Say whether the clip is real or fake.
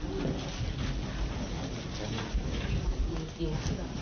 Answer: real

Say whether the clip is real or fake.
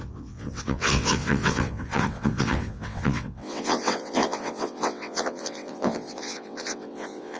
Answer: fake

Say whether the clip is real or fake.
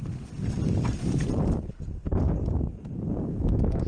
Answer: real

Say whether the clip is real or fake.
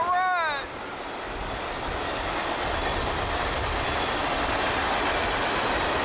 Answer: real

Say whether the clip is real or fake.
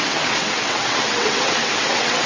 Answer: fake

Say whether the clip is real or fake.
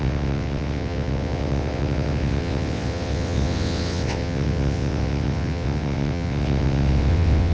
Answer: fake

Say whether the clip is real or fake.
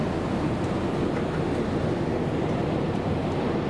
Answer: real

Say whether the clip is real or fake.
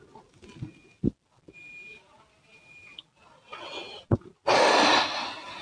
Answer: real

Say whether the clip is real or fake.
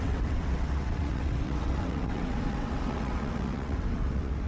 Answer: fake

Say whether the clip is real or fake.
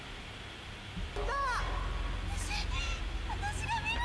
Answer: real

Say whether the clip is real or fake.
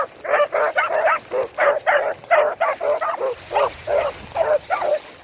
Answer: real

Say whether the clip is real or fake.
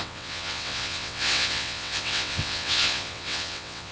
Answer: fake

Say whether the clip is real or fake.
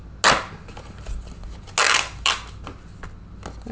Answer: real